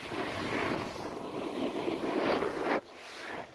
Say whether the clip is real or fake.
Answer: real